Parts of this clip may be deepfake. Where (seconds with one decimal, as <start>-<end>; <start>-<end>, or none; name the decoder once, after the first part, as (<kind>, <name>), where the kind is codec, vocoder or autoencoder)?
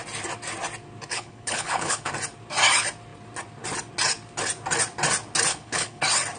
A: 1.1-2.1 (codec, HILCodec); 5.5-6.0